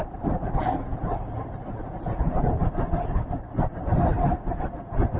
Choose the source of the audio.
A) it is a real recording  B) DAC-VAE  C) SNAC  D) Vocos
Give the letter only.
A